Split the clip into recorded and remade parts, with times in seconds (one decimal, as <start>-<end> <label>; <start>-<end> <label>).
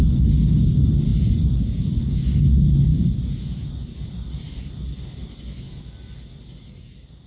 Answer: 0.0-1.1 recorded; 1.1-2.0 remade; 2.0-2.9 recorded; 2.9-4.7 remade; 4.7-7.3 recorded